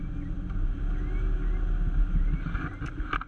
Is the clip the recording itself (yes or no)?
yes